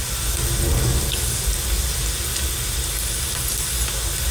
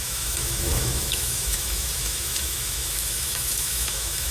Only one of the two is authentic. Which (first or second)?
first